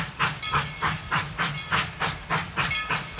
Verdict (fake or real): real